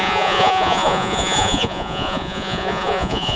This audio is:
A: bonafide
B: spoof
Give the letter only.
B